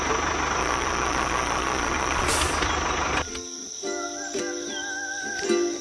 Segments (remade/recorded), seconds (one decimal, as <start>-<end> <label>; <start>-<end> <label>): 0.0-0.6 recorded; 0.6-2.3 remade; 2.3-5.8 recorded